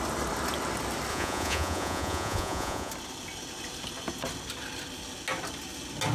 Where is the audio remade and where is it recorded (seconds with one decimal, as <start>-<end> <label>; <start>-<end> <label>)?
0.0-1.1 recorded; 1.1-2.9 remade; 2.9-6.1 recorded